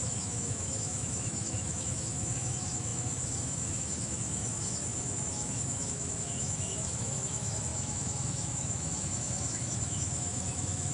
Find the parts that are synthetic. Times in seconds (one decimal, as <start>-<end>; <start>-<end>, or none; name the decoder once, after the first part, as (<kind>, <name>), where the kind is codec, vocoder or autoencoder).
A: 0.0-10.9 (autoencoder, DAC-VAE)